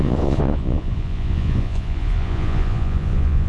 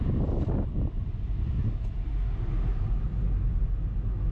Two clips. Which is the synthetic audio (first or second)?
first